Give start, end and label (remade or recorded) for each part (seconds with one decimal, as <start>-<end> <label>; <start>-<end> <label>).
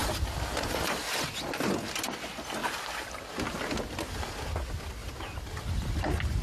0.0-1.4 remade; 1.4-5.0 recorded; 5.0-5.9 remade; 5.9-6.4 recorded